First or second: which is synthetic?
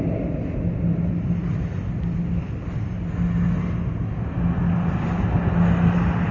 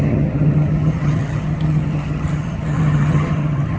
second